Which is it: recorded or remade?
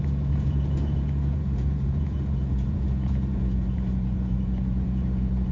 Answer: remade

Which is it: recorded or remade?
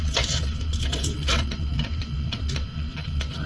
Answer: remade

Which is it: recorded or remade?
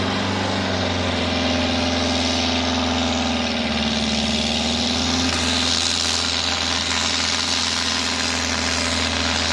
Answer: recorded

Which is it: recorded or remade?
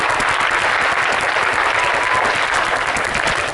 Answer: recorded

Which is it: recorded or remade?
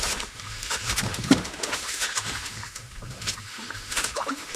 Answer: remade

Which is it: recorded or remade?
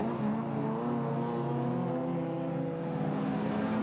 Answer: recorded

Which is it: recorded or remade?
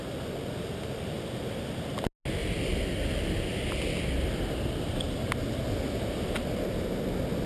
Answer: recorded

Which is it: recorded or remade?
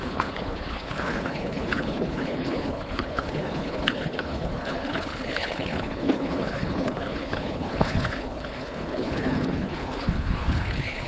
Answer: remade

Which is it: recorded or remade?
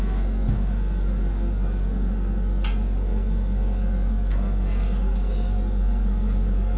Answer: remade